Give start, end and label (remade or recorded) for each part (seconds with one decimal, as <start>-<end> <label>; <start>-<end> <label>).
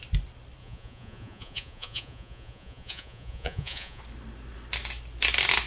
0.0-0.6 recorded; 0.6-4.0 remade; 4.0-5.7 recorded